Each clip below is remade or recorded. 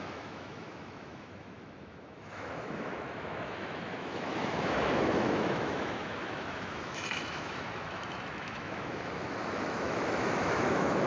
remade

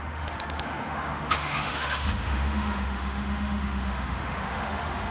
remade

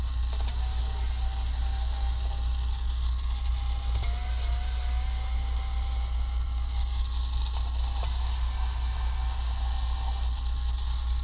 recorded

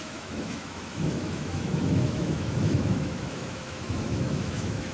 remade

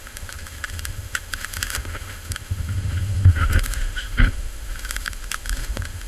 remade